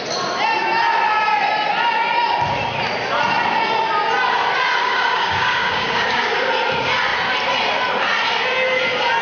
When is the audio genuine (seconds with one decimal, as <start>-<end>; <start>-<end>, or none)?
0.0-4.8; 6.3-9.2